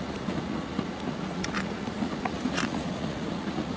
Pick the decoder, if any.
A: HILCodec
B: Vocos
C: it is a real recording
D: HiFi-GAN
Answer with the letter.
B